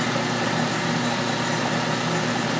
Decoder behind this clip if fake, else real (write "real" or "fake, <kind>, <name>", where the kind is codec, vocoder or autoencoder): real